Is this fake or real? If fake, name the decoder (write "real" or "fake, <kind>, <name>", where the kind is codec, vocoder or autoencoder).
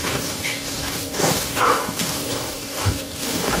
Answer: fake, codec, DAC